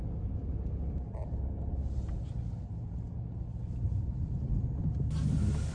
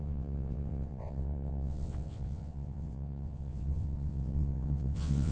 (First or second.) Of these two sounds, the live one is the first